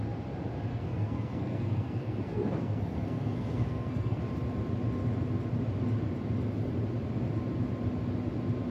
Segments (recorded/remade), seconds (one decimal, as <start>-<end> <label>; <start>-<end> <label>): 0.0-0.7 recorded; 0.7-4.2 remade; 4.2-8.7 recorded